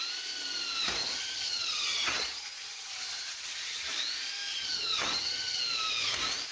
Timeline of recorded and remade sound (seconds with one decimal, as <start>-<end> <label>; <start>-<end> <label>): 0.0-1.0 recorded; 1.0-3.9 remade; 3.9-4.5 recorded; 4.5-5.6 remade; 5.6-6.5 recorded